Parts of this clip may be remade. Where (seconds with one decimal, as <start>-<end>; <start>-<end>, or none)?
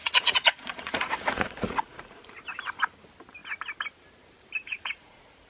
0.0-2.2; 4.6-5.5